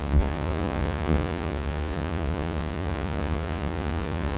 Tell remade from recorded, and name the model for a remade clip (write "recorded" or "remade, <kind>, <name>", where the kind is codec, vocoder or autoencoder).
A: remade, vocoder, Vocos